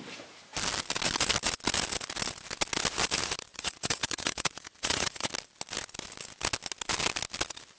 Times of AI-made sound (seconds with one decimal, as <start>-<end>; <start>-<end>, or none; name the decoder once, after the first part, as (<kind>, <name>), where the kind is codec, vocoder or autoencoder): 3.5-5.3 (vocoder, Vocos)